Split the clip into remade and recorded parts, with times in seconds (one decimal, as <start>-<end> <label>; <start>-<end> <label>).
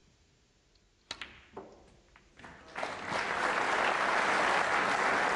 0.0-5.4 recorded